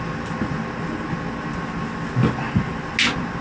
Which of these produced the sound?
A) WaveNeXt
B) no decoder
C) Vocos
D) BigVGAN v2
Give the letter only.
B